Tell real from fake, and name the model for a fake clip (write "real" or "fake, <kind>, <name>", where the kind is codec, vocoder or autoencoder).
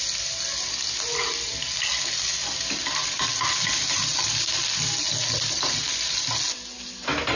real